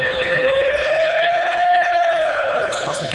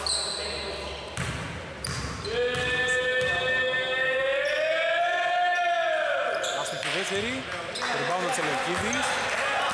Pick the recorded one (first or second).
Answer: second